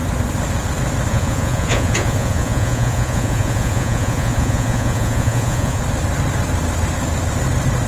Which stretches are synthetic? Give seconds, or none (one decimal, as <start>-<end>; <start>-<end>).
1.1-5.8